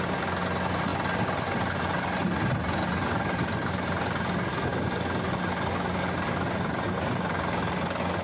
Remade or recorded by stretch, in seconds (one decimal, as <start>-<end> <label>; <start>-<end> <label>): 0.0-8.2 recorded